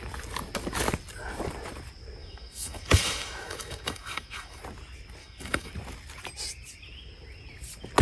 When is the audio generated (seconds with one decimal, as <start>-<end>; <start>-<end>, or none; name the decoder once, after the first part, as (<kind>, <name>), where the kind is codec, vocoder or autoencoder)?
2.2-4.6 (autoencoder, DAC-VAE); 5.2-5.7